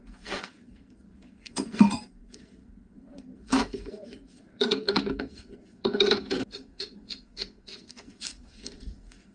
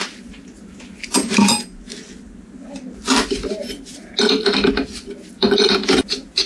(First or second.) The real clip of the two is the second